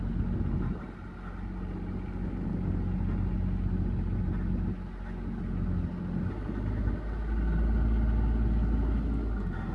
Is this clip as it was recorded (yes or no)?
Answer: yes